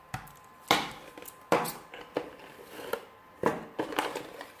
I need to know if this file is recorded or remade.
recorded